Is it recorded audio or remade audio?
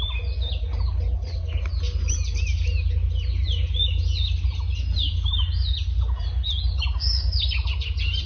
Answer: recorded